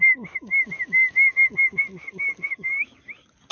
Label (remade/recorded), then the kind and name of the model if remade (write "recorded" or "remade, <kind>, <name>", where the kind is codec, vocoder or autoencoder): recorded